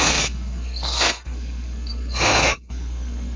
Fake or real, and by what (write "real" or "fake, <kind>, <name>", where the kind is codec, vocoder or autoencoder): fake, codec, SNAC